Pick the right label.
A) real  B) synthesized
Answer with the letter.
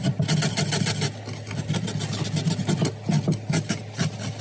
A